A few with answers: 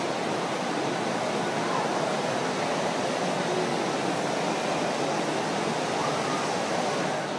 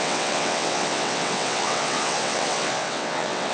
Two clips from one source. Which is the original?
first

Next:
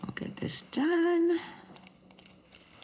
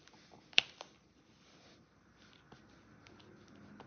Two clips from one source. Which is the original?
second